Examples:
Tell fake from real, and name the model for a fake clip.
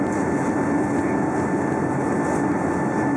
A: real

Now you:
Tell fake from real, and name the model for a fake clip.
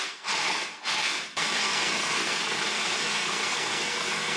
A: fake, codec, SNAC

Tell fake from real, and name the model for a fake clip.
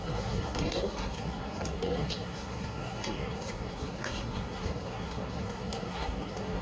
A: fake, codec, SNAC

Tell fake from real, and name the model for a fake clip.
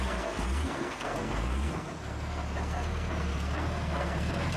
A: fake, codec, SNAC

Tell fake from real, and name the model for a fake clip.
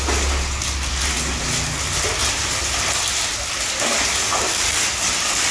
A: real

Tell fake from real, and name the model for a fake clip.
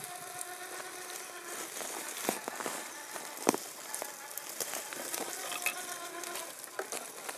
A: real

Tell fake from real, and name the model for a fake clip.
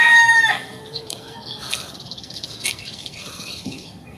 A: fake, codec, SNAC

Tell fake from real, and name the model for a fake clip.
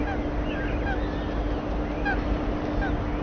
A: real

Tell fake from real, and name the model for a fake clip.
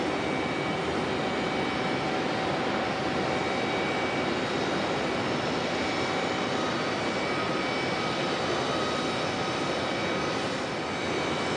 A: real